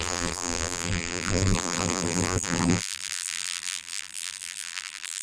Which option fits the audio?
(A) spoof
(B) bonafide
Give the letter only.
A